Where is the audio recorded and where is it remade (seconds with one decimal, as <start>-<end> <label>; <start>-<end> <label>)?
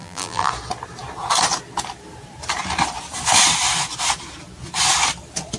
0.0-0.5 remade; 0.5-5.6 recorded